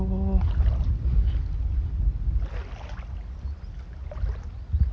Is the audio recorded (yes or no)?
yes